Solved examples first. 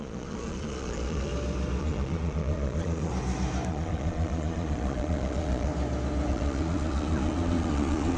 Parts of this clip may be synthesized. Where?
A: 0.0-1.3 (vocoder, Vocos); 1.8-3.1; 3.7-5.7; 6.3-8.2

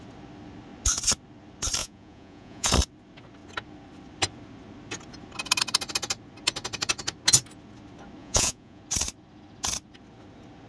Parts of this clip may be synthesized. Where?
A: 1.8-2.7 (vocoder, Vocos); 8.2-8.8

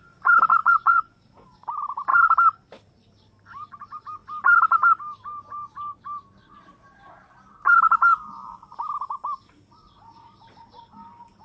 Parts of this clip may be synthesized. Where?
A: 0.6-1.2 (vocoder, Vocos)